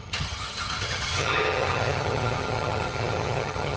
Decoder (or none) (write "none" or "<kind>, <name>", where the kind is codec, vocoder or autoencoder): vocoder, HiFi-GAN